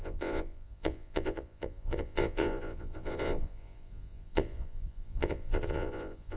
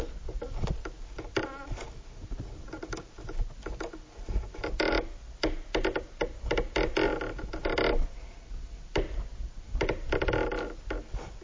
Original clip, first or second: second